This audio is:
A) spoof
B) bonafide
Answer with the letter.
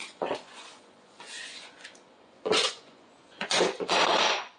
A